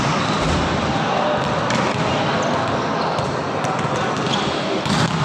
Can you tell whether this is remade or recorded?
recorded